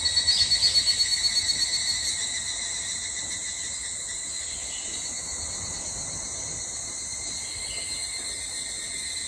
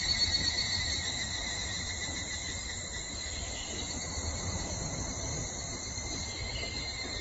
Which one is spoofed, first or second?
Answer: second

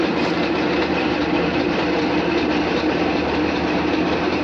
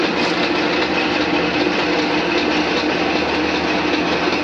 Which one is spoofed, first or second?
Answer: first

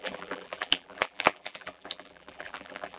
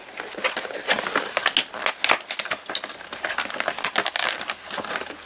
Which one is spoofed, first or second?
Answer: first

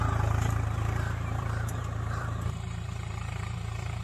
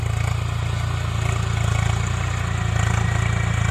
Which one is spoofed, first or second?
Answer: first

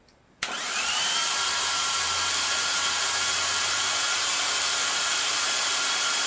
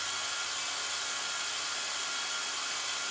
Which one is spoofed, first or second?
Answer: first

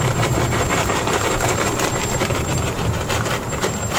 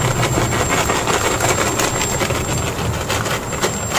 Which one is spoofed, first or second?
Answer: first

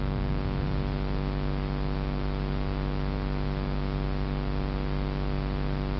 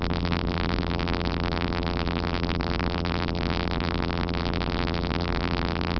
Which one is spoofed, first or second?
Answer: second